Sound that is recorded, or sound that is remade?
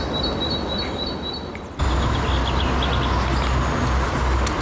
recorded